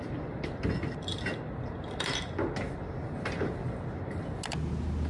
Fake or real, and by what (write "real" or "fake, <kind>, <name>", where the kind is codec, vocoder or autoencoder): real